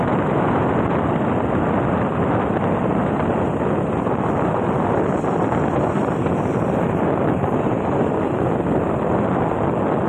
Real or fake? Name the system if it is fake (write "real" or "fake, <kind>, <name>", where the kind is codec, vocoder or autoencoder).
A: real